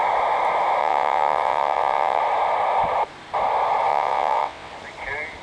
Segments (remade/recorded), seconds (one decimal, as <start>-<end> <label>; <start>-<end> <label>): 0.0-0.8 recorded; 0.8-2.2 remade; 2.2-3.9 recorded; 3.9-4.7 remade; 4.7-5.4 recorded

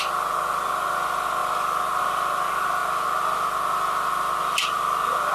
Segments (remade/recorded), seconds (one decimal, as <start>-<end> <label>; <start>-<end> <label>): 0.0-5.3 recorded

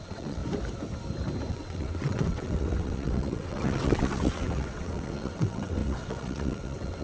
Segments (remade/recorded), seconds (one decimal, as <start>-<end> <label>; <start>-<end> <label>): 0.0-0.4 remade; 0.4-1.5 recorded; 1.5-7.0 remade